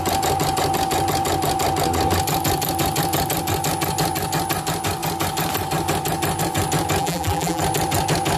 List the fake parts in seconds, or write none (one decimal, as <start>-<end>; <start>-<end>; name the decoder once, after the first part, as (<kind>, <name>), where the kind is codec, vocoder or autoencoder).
7.0-7.6 (vocoder, BigVGAN v2)